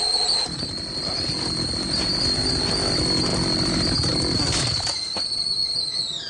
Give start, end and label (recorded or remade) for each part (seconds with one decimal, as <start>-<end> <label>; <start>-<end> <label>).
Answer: 0.0-6.3 recorded